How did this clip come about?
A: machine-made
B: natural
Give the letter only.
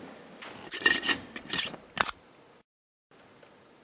B